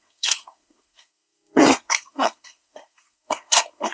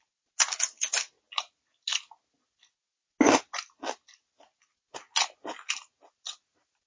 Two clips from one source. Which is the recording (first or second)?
second